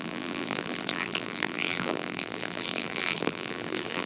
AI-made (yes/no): yes